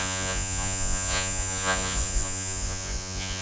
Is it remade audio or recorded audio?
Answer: remade